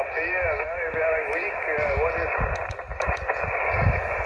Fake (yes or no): no